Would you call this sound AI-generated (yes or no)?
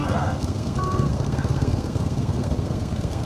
yes